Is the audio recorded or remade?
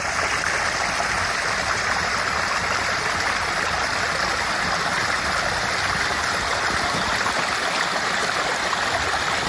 recorded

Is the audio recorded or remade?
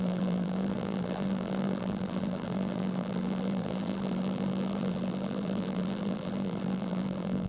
remade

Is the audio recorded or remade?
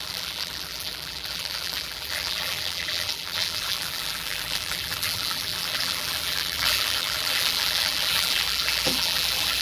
remade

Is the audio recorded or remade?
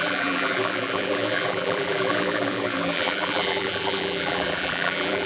remade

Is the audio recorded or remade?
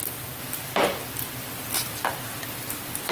recorded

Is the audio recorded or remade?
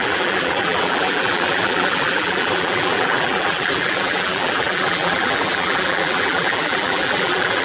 remade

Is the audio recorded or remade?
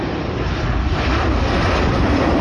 recorded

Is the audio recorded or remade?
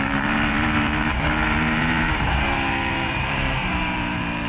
remade